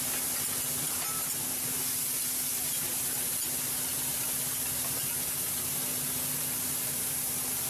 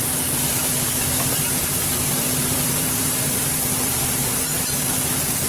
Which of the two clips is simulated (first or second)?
second